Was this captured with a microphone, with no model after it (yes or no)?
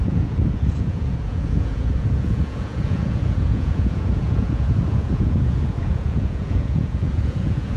no